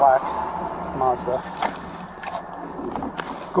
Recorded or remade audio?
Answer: recorded